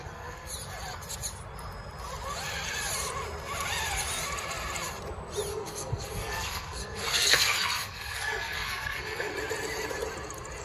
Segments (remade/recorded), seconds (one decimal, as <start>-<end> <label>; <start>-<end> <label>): 0.0-0.5 remade; 0.5-5.5 recorded; 5.5-9.3 remade; 9.3-10.6 recorded